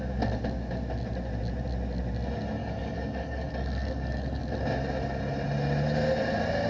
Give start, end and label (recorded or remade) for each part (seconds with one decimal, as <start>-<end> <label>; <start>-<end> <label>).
0.0-2.6 recorded; 2.6-4.4 remade; 4.4-6.7 recorded